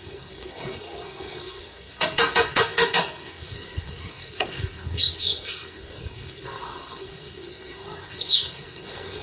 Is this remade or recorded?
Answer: remade